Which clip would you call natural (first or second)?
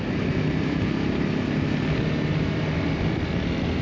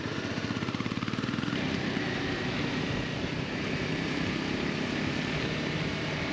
first